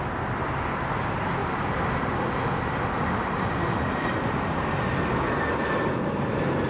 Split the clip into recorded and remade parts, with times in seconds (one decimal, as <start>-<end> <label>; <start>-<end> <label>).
0.0-1.4 recorded; 1.4-5.2 remade; 5.2-6.7 recorded